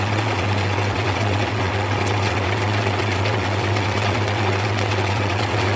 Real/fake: fake